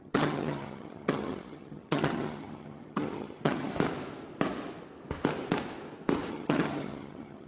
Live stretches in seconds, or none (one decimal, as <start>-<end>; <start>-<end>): 3.7-6.3